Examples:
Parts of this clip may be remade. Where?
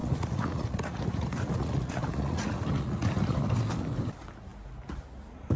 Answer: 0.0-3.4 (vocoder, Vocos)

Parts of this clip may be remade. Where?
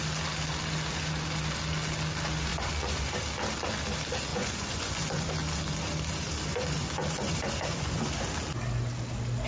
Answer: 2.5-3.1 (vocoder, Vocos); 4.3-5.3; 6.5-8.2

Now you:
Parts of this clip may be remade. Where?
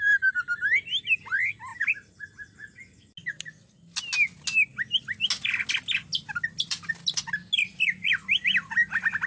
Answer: 7.6-8.1 (vocoder, Vocos)